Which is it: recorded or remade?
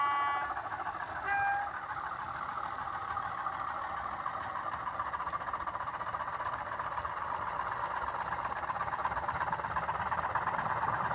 recorded